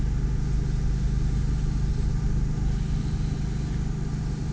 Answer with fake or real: real